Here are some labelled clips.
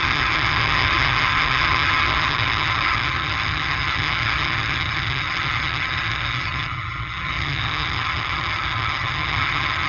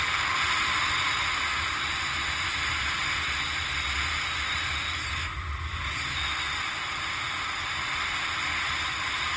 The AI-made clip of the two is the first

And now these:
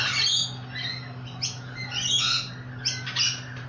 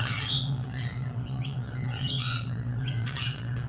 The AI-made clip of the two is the second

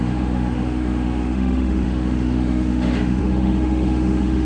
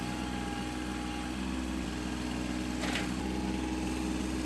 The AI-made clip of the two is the first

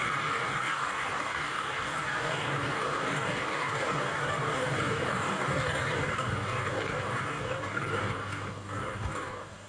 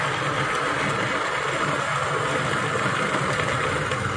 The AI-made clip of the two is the first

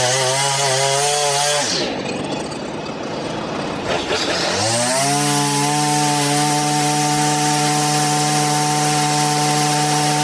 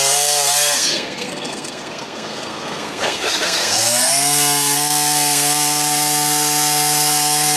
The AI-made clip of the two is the second